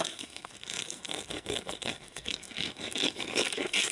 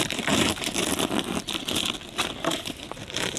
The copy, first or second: first